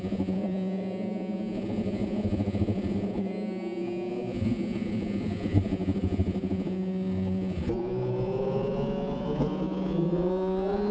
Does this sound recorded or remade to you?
remade